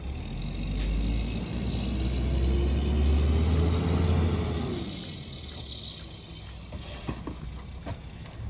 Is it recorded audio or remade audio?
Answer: recorded